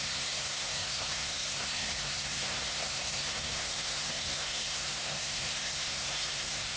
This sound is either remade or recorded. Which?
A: remade